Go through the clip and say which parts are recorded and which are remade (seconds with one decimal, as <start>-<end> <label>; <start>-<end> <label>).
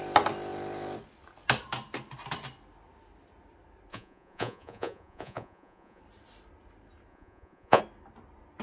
0.0-3.9 recorded; 3.9-6.0 remade; 6.0-7.1 recorded; 7.1-7.8 remade; 7.8-8.6 recorded